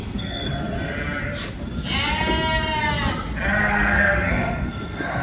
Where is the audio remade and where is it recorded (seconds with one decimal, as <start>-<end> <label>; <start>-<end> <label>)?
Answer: 0.0-0.5 remade; 0.5-3.6 recorded; 3.6-5.2 remade